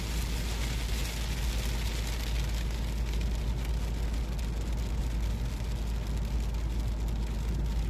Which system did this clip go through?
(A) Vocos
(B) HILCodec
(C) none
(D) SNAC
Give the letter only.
C